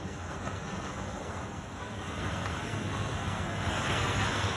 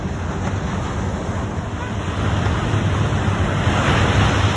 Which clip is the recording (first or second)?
second